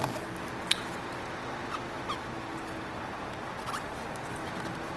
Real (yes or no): yes